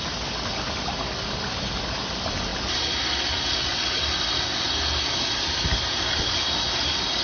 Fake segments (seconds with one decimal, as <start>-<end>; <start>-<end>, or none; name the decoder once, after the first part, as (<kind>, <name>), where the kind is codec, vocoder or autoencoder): none

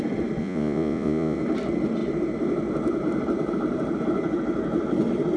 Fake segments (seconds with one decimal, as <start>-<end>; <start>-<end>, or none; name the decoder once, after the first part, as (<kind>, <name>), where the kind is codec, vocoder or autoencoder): 0.4-1.4 (vocoder, Vocos)

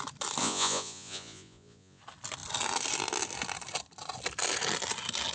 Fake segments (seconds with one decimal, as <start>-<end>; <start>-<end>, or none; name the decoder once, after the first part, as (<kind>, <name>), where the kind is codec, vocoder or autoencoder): 0.4-2.0 (vocoder, Vocos)

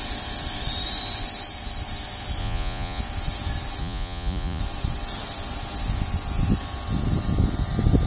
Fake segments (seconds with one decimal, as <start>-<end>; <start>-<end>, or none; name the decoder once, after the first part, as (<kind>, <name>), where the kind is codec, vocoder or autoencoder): 2.4-3.0 (vocoder, Vocos); 3.8-4.6

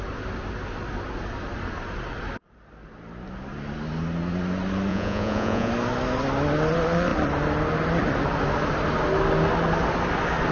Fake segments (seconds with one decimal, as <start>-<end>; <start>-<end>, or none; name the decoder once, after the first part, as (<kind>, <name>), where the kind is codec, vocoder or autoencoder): 4.9-5.7 (vocoder, Vocos)